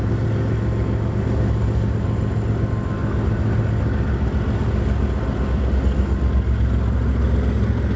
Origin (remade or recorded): recorded